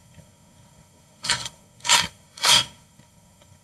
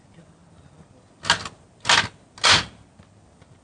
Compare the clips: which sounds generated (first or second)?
first